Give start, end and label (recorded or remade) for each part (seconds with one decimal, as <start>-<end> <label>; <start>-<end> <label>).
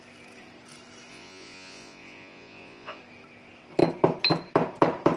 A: 0.0-1.1 recorded; 1.1-3.0 remade; 3.0-5.2 recorded